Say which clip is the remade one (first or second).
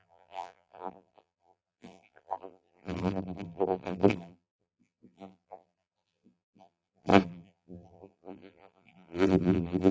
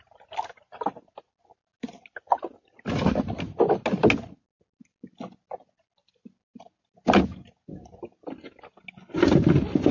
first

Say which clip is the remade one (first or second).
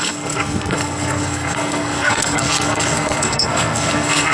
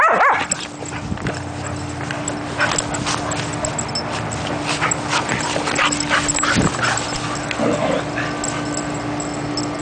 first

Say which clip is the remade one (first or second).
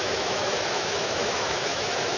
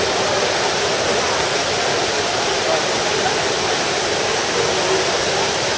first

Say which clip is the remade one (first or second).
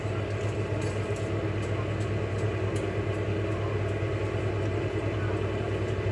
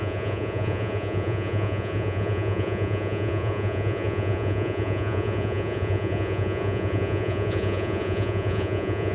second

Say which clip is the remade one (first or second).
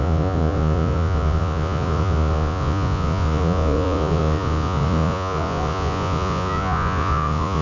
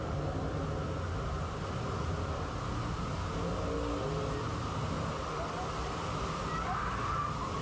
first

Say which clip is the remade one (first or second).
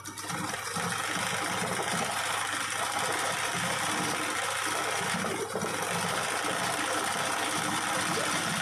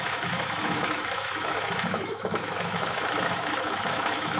second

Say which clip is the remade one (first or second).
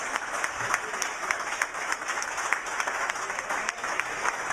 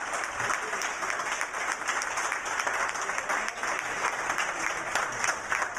first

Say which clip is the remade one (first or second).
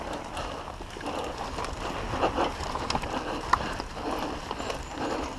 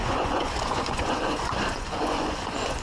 second